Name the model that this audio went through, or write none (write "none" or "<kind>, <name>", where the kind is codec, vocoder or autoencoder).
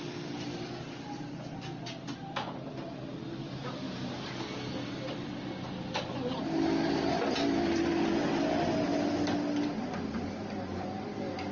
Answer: none